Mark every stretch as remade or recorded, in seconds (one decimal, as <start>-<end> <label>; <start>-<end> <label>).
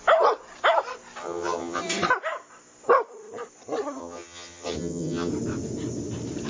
0.0-1.2 recorded; 1.2-1.8 remade; 1.8-4.0 recorded; 4.0-5.3 remade; 5.3-6.5 recorded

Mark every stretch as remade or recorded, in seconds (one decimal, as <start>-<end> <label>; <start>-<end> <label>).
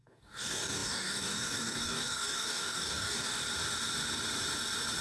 0.0-3.4 remade; 3.4-5.0 recorded